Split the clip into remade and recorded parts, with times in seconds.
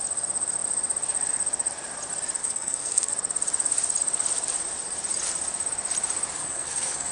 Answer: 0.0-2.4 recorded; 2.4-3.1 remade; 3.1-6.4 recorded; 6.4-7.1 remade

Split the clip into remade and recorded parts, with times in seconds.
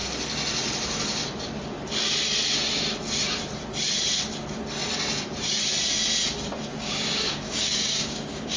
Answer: 0.0-6.7 recorded; 6.7-8.6 remade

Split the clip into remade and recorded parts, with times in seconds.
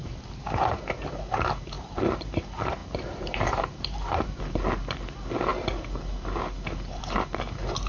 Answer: 0.0-0.8 remade; 0.8-2.8 recorded; 2.8-4.4 remade; 4.4-7.9 recorded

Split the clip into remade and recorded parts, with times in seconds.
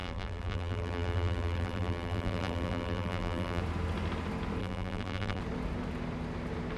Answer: 0.0-3.6 remade; 3.6-4.6 recorded; 4.6-5.4 remade; 5.4-6.8 recorded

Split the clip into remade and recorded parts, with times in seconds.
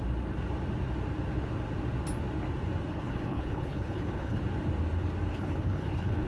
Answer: 0.0-2.9 recorded; 2.9-4.4 remade; 4.4-5.3 recorded; 5.3-6.3 remade